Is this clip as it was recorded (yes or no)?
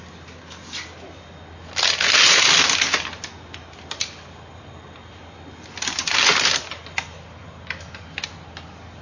yes